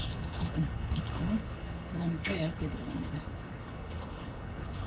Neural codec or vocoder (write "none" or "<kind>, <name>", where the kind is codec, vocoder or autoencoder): codec, HILCodec